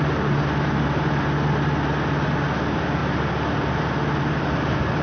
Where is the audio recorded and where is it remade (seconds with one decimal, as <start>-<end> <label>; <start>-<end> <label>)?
0.0-5.0 recorded

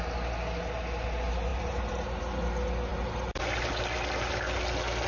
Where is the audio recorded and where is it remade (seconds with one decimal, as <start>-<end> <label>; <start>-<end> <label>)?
0.0-1.5 recorded; 1.5-2.2 remade; 2.2-2.9 recorded; 2.9-3.4 remade; 3.4-5.1 recorded

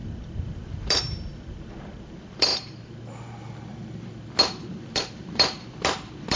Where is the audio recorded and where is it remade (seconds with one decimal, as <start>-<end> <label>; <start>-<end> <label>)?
0.0-2.5 remade; 2.5-4.7 recorded; 4.7-6.4 remade

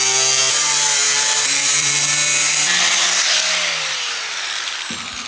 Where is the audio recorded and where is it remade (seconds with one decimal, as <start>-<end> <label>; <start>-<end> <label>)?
0.0-5.3 remade